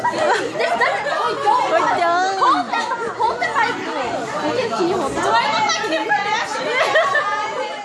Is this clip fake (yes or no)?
no